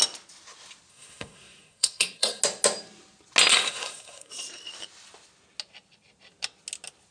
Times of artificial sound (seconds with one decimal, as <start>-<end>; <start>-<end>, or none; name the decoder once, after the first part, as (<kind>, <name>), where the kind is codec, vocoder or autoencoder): 0.9-2.4 (codec, SNAC); 3.5-4.3